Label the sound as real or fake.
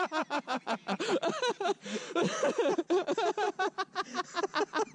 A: real